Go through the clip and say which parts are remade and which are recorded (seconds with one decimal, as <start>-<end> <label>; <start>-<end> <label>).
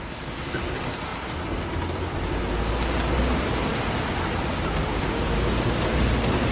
0.0-6.5 recorded